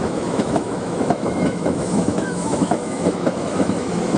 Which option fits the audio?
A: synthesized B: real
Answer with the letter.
A